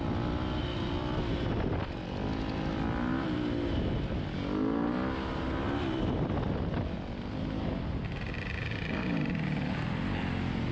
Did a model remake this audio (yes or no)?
no